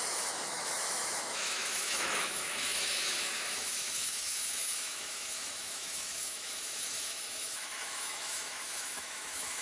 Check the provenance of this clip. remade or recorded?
remade